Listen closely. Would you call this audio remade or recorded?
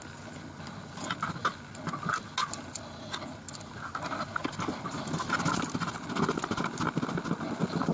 recorded